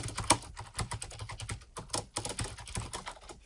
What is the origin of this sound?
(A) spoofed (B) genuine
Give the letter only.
B